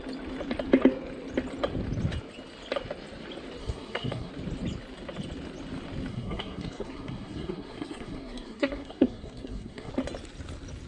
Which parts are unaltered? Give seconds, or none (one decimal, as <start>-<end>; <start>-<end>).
0.0-3.6; 4.3-6.1; 9.9-10.9